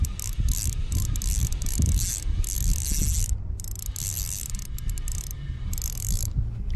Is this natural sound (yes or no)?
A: yes